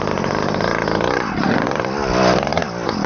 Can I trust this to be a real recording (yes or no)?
yes